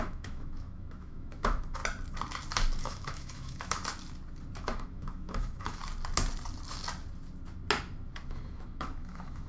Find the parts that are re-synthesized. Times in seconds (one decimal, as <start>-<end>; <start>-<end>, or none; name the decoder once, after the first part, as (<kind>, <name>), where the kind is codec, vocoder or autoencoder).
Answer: 0.0-1.8 (autoencoder, DAC-VAE); 2.8-3.8; 4.6-5.8; 8.3-9.5